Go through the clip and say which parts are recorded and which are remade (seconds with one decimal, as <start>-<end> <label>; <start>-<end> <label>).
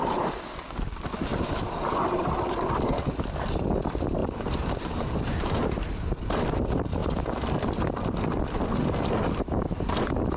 0.0-1.3 recorded; 1.3-1.8 remade; 1.8-4.2 recorded; 4.2-6.0 remade; 6.0-10.4 recorded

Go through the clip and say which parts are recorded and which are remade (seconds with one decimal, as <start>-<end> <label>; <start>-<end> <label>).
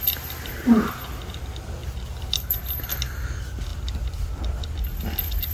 0.0-1.8 recorded; 1.8-2.8 remade; 2.8-5.5 recorded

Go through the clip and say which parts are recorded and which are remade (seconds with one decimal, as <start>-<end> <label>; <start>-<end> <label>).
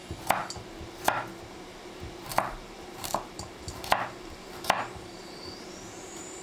0.0-2.3 recorded; 2.3-6.4 remade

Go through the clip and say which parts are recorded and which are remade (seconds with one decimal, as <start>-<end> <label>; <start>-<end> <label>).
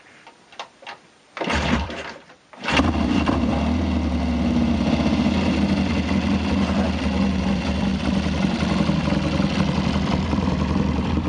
0.0-3.5 remade; 3.5-7.4 recorded; 7.4-7.9 remade; 7.9-9.6 recorded; 9.6-11.3 remade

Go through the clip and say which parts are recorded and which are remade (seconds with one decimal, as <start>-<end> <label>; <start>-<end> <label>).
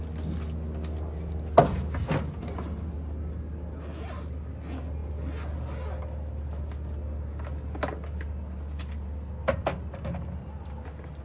0.0-11.2 recorded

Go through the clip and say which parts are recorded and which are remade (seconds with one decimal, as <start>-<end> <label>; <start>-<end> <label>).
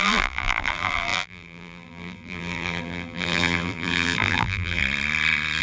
0.0-4.8 remade; 4.8-5.6 recorded